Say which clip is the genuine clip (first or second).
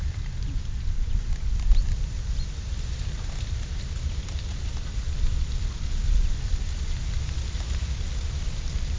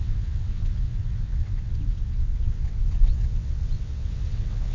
first